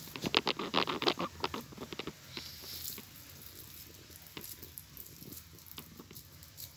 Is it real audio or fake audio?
real